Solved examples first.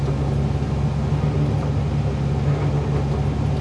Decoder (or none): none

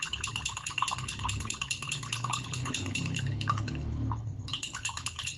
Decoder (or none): codec, HILCodec